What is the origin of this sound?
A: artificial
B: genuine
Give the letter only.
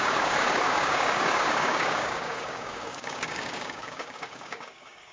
A